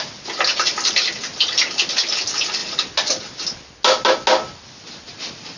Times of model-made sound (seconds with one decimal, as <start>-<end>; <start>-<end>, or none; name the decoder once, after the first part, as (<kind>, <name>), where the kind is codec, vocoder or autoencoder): none